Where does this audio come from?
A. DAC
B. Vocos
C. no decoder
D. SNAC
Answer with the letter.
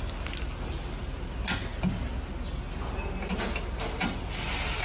C